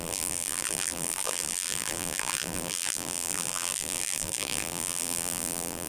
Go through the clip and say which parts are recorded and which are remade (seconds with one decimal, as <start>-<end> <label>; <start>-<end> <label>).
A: 0.0-5.9 remade